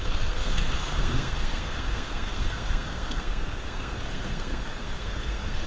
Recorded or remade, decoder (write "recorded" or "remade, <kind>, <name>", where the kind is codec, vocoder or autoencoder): remade, codec, SNAC